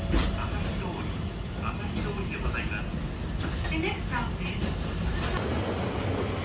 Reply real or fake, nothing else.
real